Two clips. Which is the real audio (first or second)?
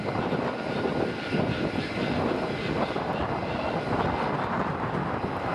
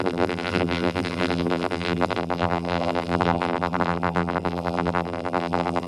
first